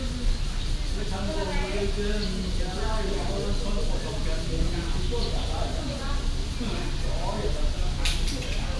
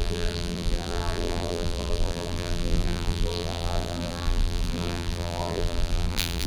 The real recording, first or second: first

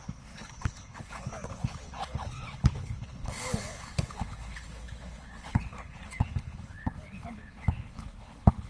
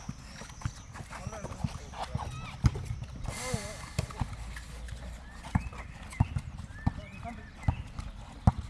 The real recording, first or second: second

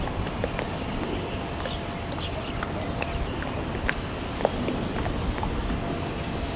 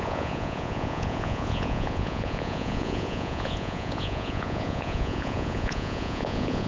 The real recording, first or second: first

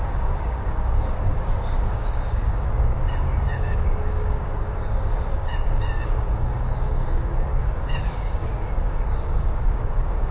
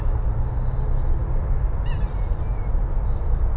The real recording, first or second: second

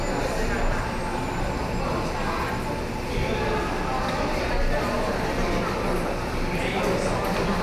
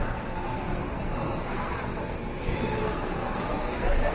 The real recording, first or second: first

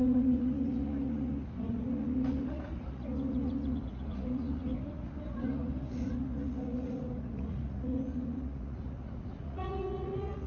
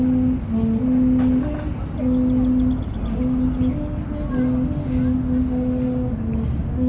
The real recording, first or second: second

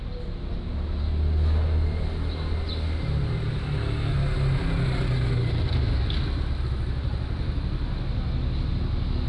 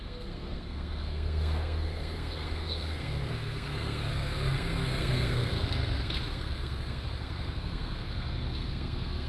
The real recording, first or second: first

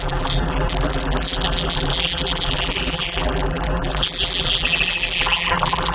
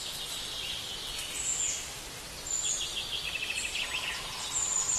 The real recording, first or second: second